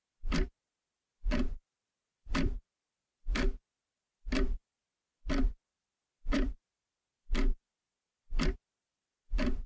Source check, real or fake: fake